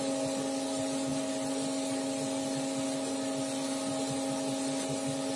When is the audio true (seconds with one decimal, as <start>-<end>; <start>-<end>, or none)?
0.0-5.4